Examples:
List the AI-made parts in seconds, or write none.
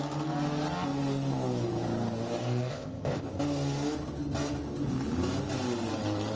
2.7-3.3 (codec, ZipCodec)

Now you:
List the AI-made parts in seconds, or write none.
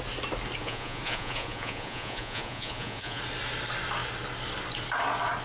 0.6-3.2 (vocoder, Vocos)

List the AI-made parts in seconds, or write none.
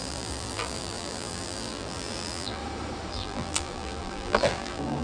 0.0-2.6 (vocoder, BigVGAN v2); 3.1-5.0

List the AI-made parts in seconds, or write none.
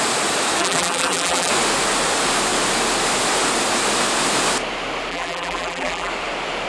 0.6-1.5 (vocoder, BigVGAN v2); 5.1-6.1